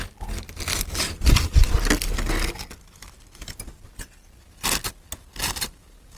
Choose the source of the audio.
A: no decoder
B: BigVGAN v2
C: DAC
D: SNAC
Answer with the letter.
A